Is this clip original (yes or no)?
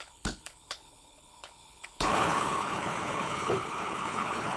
no